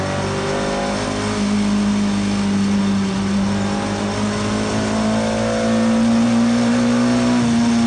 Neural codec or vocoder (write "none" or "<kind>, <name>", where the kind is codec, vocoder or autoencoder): none